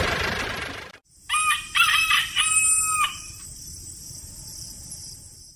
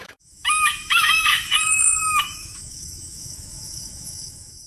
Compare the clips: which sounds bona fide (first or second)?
first